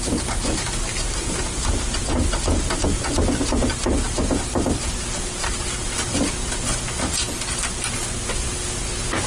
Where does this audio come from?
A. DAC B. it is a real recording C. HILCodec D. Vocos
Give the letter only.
B